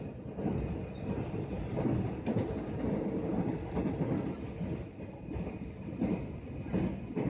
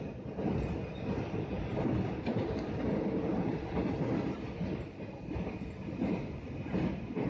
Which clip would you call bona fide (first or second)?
first